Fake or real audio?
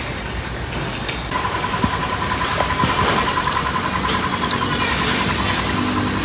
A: real